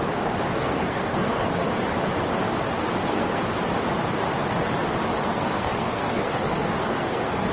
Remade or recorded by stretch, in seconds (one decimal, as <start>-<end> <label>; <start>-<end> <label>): 0.0-0.5 recorded; 0.5-1.7 remade; 1.7-3.0 recorded; 3.0-3.6 remade; 3.6-5.2 recorded; 5.2-7.5 remade